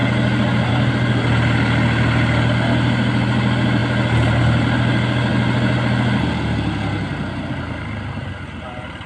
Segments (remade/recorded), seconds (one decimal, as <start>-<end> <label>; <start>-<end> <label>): 0.0-9.1 recorded